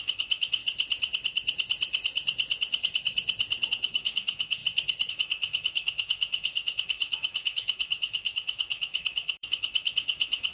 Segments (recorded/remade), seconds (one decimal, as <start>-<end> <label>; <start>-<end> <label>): 0.0-0.6 remade; 0.6-3.7 recorded; 3.7-4.6 remade; 4.6-5.1 recorded; 5.1-10.5 remade

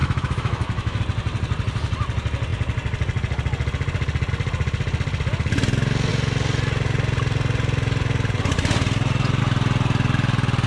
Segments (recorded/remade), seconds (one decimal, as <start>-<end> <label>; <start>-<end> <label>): 0.0-1.0 remade; 1.0-10.7 recorded